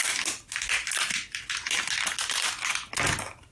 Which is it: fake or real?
real